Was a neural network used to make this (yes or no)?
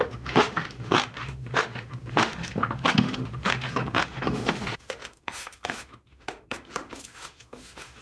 yes